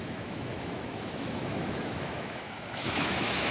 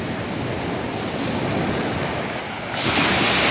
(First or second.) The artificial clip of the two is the first